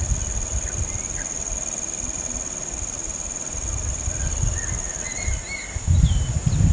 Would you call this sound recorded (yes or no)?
yes